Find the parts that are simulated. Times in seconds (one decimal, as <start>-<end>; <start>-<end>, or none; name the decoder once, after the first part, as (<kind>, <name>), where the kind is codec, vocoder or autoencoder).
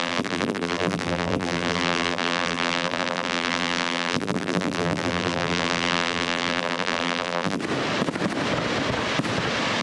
0.0-7.6 (vocoder, BigVGAN v2)